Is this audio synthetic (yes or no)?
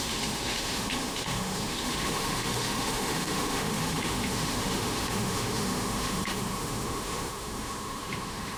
yes